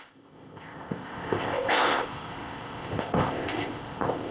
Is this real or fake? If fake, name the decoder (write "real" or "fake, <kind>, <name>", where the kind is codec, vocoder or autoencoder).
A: fake, codec, ZipCodec